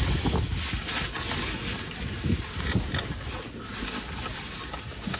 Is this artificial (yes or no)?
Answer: no